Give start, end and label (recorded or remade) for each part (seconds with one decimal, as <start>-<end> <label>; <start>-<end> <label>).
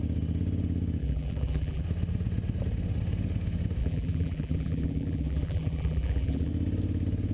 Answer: 0.0-1.0 recorded; 1.0-1.8 remade; 1.8-3.8 recorded; 3.8-6.5 remade; 6.5-7.3 recorded